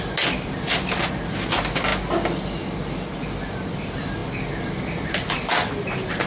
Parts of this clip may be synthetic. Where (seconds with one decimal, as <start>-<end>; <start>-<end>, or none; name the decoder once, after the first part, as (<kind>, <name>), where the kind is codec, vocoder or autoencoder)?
none